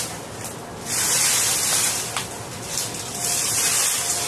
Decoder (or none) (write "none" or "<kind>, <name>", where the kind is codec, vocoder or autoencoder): none